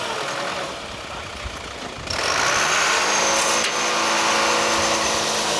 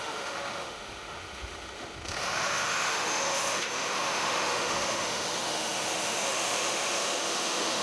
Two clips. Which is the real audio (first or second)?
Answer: first